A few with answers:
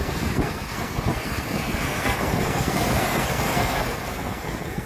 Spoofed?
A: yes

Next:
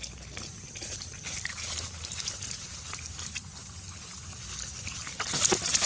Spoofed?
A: no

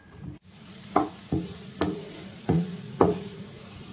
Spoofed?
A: yes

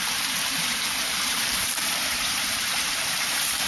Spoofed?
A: yes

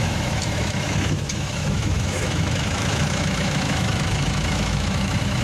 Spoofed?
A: yes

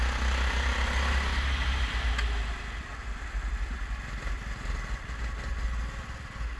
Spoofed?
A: no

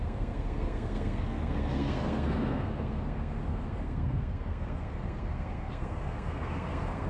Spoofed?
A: yes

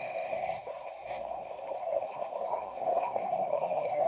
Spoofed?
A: yes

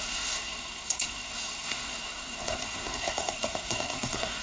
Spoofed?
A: yes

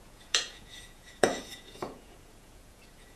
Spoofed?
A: yes